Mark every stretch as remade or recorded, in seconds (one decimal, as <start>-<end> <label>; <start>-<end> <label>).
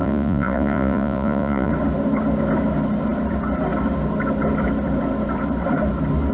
0.0-1.7 remade; 1.7-6.3 recorded